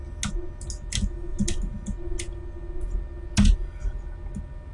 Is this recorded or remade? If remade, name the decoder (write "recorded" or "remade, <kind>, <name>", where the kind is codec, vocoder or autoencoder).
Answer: recorded